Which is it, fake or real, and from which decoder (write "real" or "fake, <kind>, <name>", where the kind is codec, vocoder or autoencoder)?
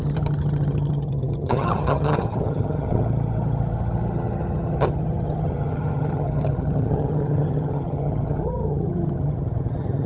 fake, vocoder, HiFi-GAN